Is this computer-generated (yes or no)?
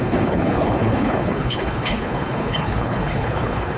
yes